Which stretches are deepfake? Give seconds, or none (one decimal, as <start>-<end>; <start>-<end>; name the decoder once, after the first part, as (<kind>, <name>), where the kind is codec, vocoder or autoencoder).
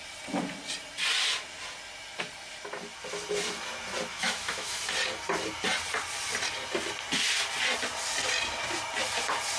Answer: 4.1-4.8 (autoencoder, DAC-VAE)